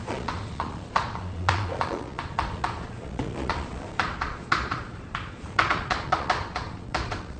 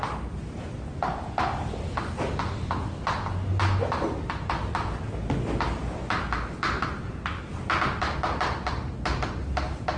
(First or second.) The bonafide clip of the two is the second